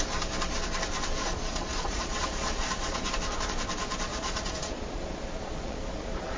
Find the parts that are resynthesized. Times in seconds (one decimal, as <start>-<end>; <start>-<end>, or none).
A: 1.2-3.1; 4.1-6.4